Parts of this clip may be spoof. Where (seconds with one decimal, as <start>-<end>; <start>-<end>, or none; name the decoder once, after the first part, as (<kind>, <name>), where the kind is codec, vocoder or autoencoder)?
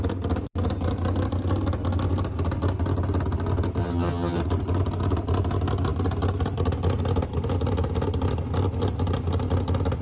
3.8-4.4 (vocoder, HiFi-GAN)